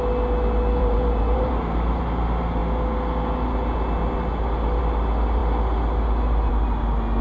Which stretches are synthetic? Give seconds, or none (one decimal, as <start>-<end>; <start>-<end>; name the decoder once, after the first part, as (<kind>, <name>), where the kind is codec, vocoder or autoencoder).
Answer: 0.8-2.0 (vocoder, BigVGAN v2)